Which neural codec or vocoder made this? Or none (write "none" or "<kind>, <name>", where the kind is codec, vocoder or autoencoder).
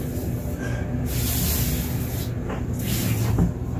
none